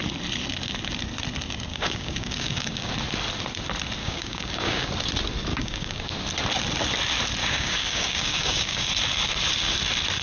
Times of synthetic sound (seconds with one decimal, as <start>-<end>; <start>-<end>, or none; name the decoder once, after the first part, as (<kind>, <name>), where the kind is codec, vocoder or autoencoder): 1.7-2.9 (codec, DAC); 4.0-4.9; 5.5-6.1; 7.4-8.9